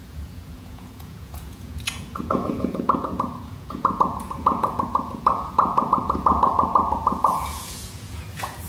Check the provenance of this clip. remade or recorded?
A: remade